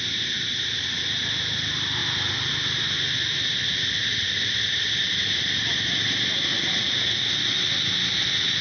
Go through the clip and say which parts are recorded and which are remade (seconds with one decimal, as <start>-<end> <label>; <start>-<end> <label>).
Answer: 0.0-6.5 recorded; 6.5-7.5 remade; 7.5-8.6 recorded